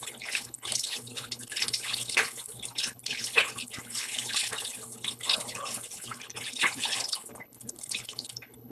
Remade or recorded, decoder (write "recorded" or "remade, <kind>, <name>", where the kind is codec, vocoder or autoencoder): remade, codec, HILCodec